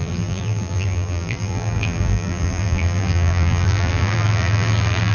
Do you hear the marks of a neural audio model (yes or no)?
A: yes